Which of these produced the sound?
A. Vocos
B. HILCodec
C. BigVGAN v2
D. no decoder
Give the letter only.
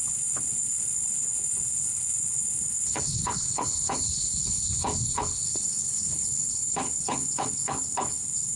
B